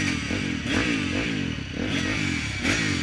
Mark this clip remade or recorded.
recorded